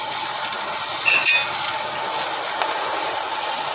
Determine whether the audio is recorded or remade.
recorded